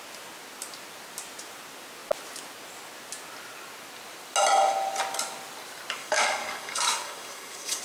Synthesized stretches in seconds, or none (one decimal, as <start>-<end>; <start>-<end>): 6.0-7.8